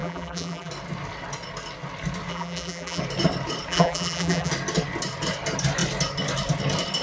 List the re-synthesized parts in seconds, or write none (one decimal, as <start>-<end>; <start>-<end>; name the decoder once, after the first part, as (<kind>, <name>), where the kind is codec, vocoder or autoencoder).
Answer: 0.0-0.7 (vocoder, BigVGAN v2); 2.3-3.0; 3.7-4.5